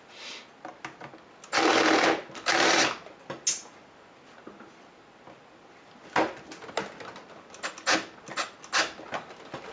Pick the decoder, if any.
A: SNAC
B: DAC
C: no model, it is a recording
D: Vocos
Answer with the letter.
C